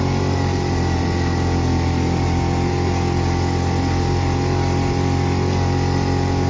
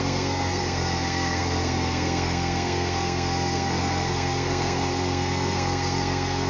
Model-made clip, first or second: second